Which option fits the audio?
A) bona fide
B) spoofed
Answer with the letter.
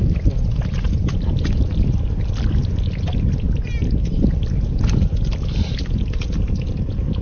A